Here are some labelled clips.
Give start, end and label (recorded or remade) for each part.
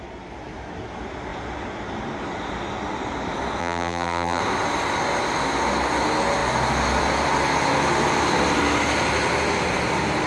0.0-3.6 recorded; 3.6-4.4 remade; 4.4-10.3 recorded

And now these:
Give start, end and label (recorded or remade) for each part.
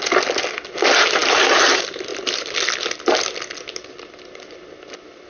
0.0-5.3 recorded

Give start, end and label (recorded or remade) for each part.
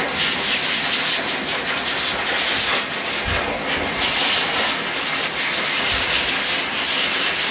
0.0-7.5 recorded